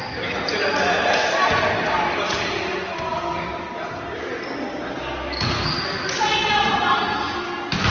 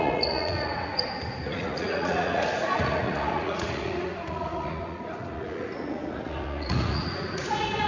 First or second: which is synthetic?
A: second